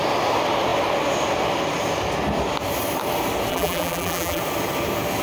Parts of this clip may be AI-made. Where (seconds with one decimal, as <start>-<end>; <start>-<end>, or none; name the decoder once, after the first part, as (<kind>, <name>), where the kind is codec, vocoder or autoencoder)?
3.5-4.4 (vocoder, BigVGAN v2)